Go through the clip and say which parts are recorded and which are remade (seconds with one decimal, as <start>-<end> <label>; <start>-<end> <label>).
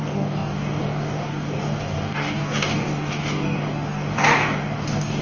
0.0-5.2 remade